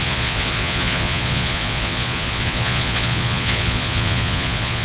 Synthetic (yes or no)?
yes